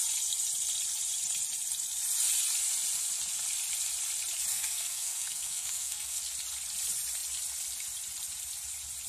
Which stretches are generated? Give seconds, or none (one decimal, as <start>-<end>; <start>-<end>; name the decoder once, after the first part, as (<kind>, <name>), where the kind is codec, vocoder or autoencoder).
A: 4.5-6.2 (codec, SNAC)